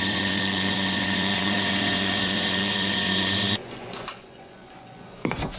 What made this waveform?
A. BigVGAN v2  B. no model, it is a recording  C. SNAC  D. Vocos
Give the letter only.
D